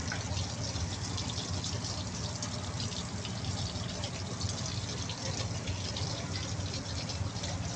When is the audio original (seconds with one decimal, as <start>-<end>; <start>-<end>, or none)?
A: 0.0-7.8